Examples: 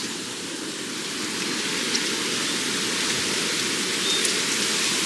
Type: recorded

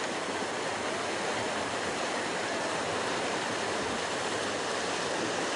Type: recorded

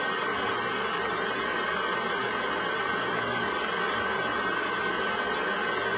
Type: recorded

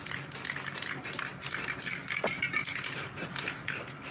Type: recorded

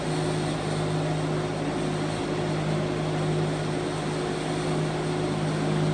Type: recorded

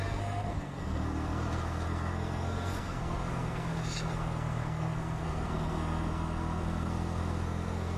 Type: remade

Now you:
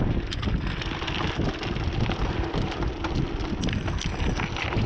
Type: recorded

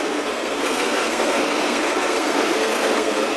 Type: remade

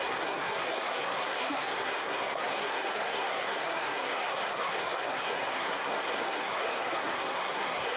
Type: remade